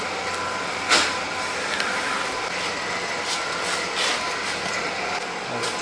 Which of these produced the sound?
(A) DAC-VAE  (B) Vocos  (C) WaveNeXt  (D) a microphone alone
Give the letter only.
D